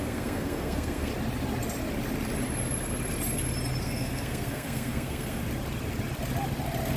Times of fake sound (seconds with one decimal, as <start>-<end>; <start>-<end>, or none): 0.0-1.1; 3.8-5.4